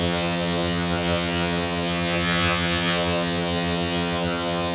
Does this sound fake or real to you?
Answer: fake